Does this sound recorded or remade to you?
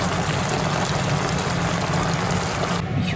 recorded